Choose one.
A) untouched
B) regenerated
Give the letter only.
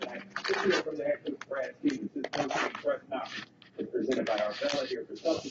A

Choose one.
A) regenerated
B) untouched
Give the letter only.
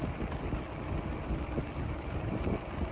B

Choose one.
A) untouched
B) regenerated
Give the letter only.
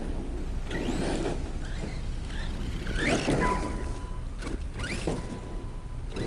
A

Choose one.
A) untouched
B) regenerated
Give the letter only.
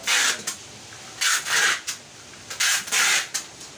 A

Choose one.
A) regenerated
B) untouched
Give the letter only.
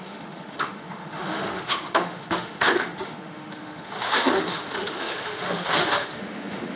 A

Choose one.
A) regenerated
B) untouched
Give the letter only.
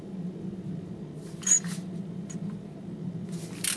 B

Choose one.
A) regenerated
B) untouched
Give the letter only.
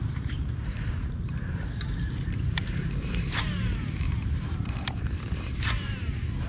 A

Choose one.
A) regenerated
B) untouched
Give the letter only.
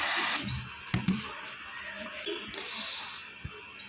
B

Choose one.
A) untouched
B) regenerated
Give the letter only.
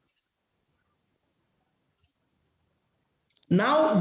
A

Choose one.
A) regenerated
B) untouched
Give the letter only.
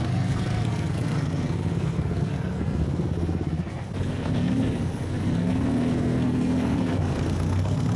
A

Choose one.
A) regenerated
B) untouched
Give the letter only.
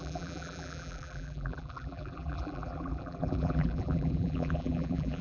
A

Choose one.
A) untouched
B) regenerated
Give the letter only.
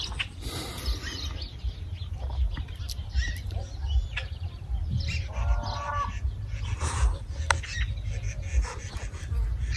A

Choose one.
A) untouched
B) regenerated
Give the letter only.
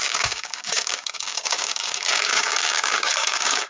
B